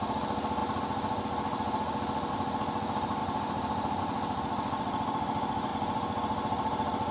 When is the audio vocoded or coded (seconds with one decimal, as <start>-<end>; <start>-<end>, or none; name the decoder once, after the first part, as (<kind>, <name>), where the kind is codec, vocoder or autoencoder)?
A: none